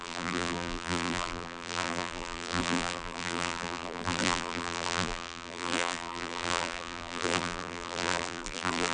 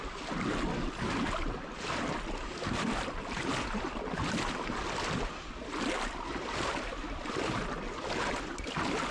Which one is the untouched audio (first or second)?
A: second